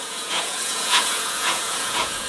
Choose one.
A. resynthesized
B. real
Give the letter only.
A